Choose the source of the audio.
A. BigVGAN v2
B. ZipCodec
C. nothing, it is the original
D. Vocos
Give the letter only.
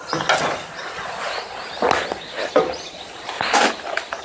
C